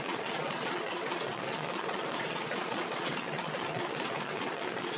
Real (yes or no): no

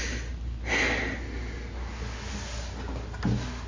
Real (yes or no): yes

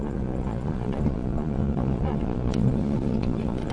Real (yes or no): no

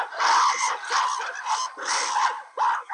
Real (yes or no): yes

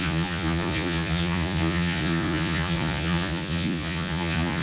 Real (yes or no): no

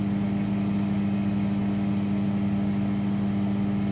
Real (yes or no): yes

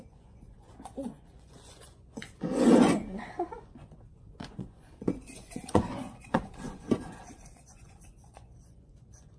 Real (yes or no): no